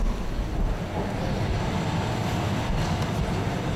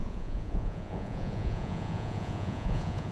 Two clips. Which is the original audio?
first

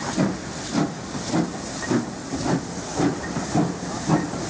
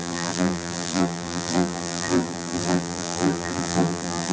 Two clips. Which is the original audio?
first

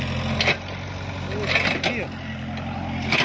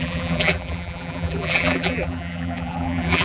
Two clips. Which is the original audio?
first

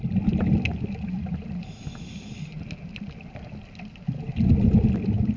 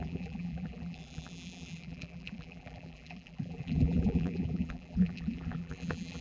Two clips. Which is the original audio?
first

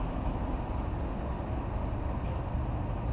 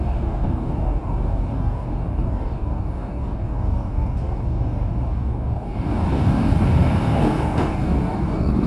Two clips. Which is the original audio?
first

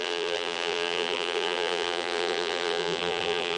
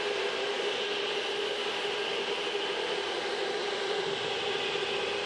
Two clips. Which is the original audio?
second